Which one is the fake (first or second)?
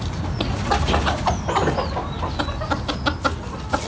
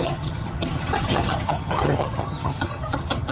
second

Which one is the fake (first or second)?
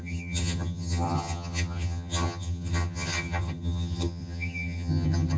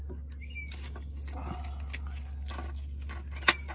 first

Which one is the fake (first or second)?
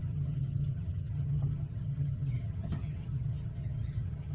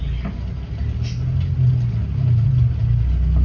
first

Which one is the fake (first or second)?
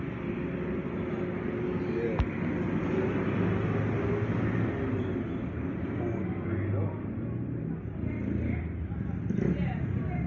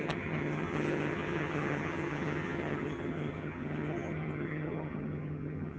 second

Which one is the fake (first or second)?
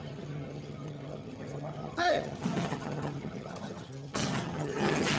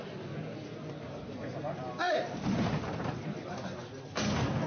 first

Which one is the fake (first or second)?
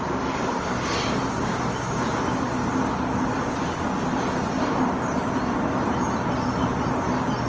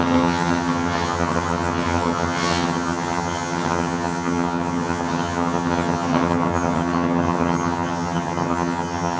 second